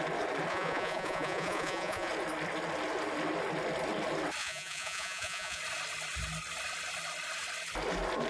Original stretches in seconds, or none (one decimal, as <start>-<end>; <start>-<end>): 0.0-0.5; 2.1-4.4; 5.6-8.3